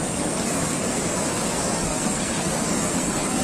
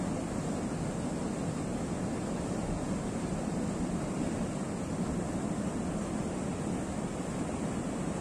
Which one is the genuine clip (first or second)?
second